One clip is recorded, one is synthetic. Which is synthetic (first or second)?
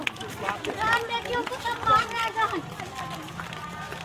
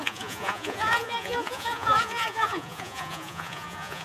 second